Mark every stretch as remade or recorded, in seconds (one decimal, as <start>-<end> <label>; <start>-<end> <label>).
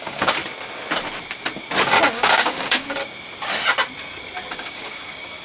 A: 0.0-0.4 remade; 0.4-2.1 recorded; 2.1-3.0 remade; 3.0-4.5 recorded; 4.5-5.4 remade